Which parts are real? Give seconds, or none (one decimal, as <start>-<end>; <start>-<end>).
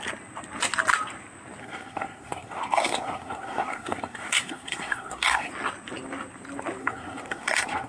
0.0-1.6; 5.5-6.8